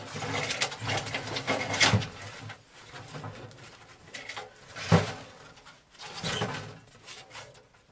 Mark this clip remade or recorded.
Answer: recorded